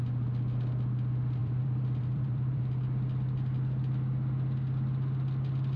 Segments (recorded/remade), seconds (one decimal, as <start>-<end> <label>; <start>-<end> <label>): 0.0-1.4 recorded; 1.4-2.6 remade; 2.6-5.8 recorded